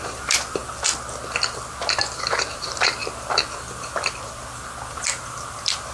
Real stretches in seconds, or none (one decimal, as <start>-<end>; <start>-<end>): 0.6-2.5; 3.0-4.9